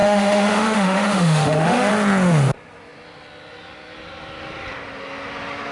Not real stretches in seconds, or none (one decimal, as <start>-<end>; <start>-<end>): 0.0-1.9